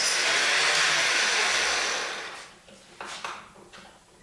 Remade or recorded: recorded